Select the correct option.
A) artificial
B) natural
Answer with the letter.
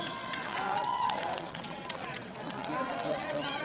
A